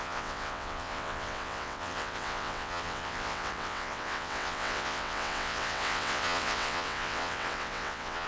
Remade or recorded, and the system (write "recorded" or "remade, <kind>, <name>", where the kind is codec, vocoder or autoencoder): remade, vocoder, WaveNeXt